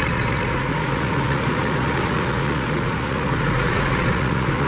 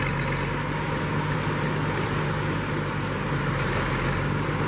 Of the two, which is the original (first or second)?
second